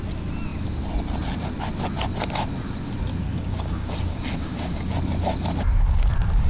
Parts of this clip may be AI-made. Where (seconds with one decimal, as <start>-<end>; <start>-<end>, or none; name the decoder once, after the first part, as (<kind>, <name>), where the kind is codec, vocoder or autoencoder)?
3.3-4.9 (codec, DAC)